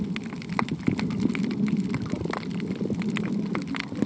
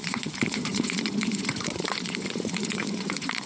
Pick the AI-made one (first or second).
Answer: second